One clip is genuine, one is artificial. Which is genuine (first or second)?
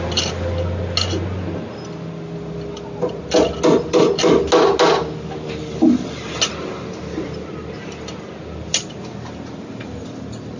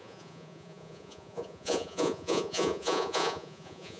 first